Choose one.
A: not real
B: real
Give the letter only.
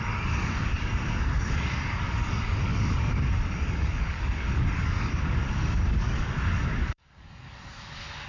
A